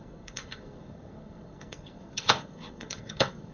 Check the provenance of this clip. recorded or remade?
remade